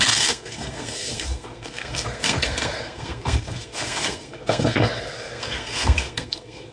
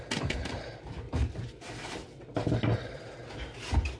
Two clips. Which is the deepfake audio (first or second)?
first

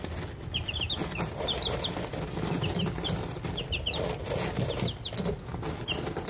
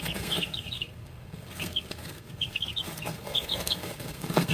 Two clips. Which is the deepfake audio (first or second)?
second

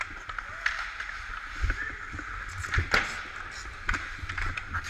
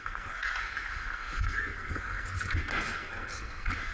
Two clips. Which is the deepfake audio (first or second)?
second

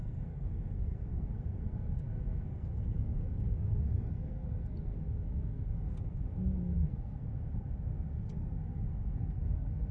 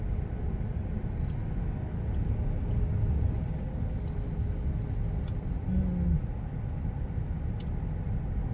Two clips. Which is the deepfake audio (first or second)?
first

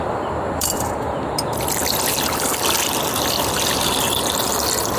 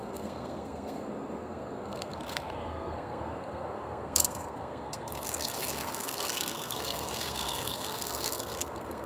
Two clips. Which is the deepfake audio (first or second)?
second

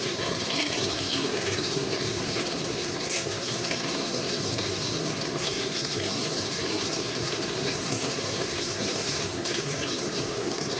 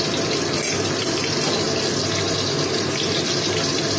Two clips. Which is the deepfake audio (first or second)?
first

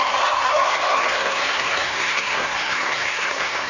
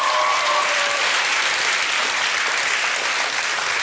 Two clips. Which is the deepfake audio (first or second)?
first